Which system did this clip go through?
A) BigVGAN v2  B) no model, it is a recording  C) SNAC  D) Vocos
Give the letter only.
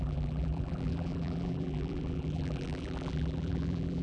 A